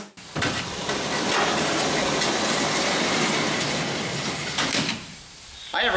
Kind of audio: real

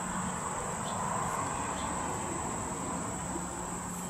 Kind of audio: real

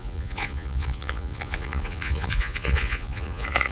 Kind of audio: fake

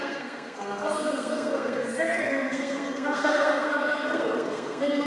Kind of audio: fake